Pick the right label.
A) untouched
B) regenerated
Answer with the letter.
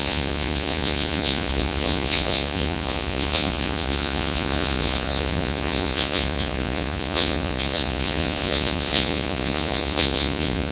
B